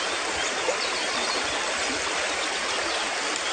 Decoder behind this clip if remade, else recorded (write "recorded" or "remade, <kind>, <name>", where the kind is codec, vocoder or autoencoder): recorded